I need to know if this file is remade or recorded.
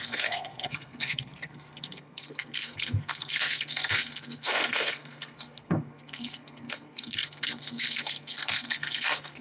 remade